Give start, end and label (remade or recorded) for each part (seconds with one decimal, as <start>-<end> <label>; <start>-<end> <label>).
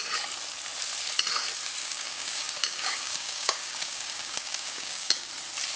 0.0-1.8 recorded; 1.8-5.3 remade; 5.3-5.8 recorded